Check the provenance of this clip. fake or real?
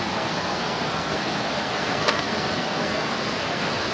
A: fake